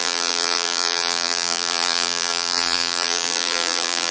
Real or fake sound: fake